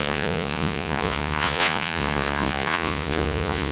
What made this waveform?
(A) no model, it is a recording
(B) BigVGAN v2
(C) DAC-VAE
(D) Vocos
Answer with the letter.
D